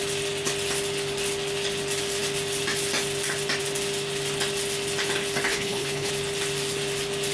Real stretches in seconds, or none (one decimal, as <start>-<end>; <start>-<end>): 0.0-5.5; 6.1-7.3